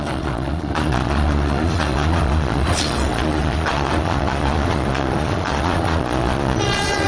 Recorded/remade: remade